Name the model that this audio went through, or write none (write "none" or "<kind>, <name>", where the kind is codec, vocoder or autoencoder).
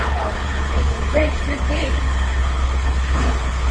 codec, HILCodec